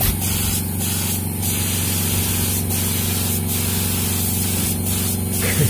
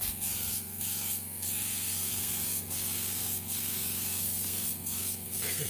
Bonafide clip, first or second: first